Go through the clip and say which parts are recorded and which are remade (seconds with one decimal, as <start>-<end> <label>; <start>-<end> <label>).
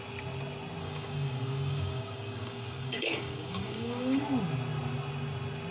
0.0-0.8 recorded; 0.8-4.2 remade; 4.2-5.7 recorded